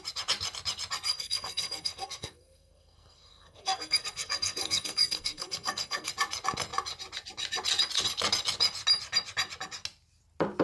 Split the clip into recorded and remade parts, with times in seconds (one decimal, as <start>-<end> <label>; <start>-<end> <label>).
0.0-1.1 recorded; 1.1-6.1 remade; 6.1-10.6 recorded